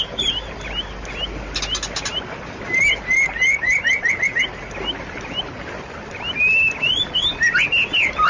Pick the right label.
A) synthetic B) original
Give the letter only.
B